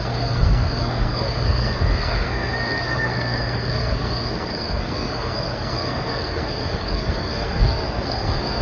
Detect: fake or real fake